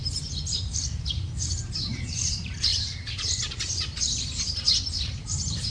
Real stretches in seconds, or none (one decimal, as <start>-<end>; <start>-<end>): none